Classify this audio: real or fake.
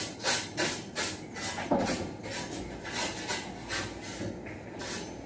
real